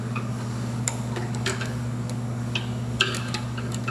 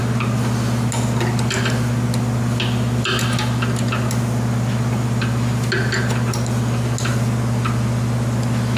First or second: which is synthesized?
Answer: first